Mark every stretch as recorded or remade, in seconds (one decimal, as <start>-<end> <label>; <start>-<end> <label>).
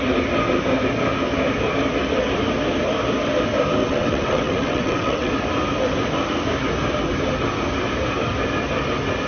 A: 0.0-3.8 recorded; 3.8-5.3 remade; 5.3-9.3 recorded